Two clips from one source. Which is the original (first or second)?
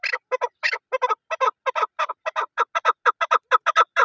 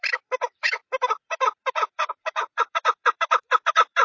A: first